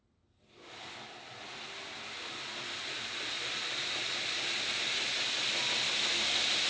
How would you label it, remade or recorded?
recorded